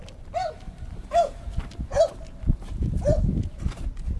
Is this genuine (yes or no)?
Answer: yes